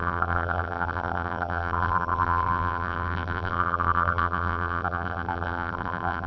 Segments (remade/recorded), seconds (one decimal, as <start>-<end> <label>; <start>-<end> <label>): 0.0-6.3 remade